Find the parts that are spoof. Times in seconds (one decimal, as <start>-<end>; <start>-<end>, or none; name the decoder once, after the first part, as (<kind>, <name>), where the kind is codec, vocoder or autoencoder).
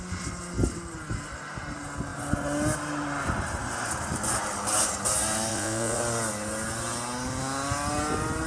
5.5-6.0 (vocoder, Vocos)